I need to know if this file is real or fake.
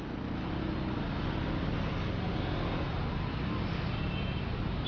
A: real